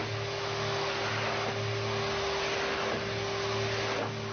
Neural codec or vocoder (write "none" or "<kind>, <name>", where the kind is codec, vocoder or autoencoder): none